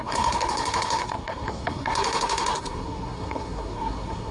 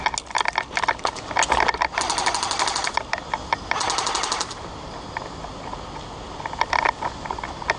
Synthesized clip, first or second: first